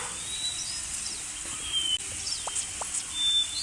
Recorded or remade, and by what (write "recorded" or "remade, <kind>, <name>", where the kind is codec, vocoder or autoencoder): recorded